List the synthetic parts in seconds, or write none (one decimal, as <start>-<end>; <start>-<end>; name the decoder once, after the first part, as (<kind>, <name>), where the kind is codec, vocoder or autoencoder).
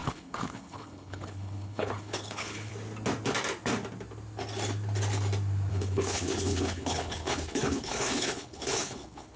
0.0-2.7 (codec, HILCodec); 5.7-9.4